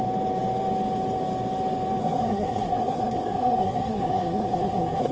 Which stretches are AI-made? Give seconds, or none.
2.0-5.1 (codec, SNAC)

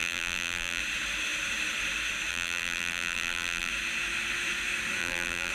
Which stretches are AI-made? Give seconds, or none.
0.0-0.8 (vocoder, BigVGAN v2); 2.3-3.7; 5.0-5.5